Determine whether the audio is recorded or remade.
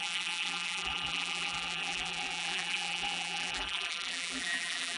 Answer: remade